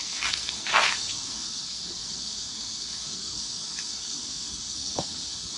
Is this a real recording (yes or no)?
no